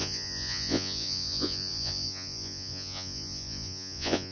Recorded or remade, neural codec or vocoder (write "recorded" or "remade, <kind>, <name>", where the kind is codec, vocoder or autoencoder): remade, vocoder, Vocos